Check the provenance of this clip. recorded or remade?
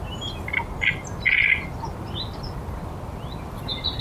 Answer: recorded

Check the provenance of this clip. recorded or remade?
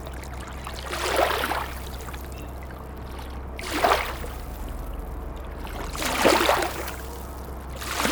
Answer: recorded